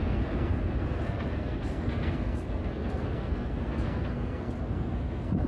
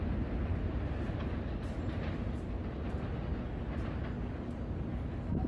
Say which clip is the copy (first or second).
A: first